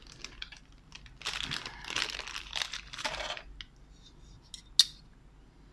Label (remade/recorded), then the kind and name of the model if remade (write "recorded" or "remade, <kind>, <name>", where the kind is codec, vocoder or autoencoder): recorded